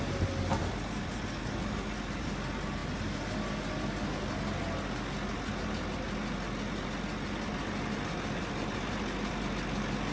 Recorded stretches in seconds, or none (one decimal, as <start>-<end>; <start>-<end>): 0.0-10.1